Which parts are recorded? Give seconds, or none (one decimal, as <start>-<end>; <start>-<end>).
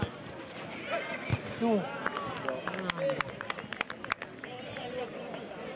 0.0-5.8